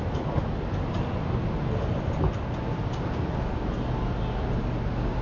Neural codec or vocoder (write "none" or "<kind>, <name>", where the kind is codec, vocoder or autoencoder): none